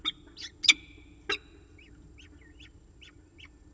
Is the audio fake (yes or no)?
no